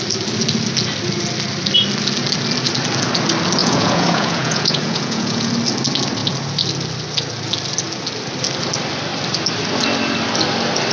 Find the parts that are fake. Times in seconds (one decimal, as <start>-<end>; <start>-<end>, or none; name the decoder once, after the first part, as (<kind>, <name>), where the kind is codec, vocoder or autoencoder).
3.6-5.5 (vocoder, Vocos)